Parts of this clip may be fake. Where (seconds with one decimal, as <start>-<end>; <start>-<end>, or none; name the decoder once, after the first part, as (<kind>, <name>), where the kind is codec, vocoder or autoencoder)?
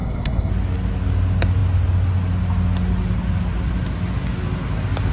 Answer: 0.0-0.5 (codec, SNAC)